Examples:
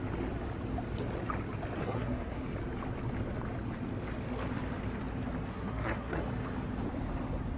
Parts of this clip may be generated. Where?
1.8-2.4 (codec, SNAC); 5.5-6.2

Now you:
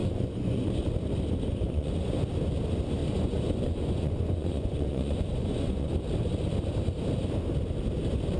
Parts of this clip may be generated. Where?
0.0-0.8 (vocoder, Vocos); 1.5-2.1; 3.0-5.9

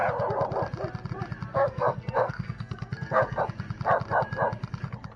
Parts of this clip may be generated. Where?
1.5-3.4 (codec, SNAC)

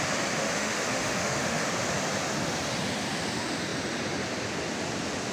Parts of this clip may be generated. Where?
0.4-1.6 (autoencoder, DAC-VAE)

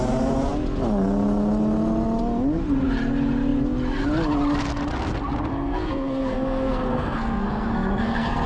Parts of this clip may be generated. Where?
5.5-8.5 (codec, SNAC)

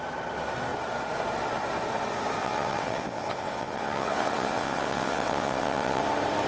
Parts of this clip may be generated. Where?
2.4-6.0 (vocoder, WaveNeXt)